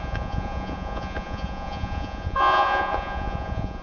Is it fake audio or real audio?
fake